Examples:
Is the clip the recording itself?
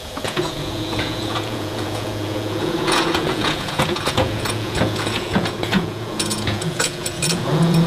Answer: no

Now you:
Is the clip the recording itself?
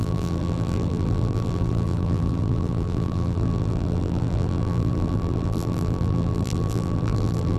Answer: no